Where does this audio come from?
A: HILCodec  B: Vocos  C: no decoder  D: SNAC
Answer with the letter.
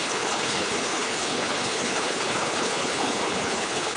A